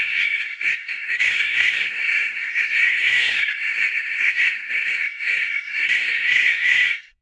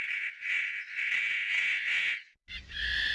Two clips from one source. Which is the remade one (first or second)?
first